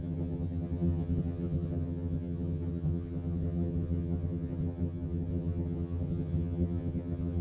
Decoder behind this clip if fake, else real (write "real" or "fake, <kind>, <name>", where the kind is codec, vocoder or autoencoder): fake, vocoder, HiFi-GAN